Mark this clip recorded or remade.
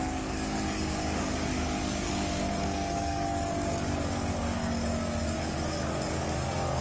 remade